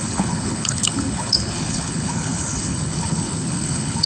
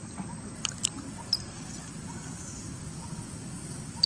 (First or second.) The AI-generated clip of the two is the first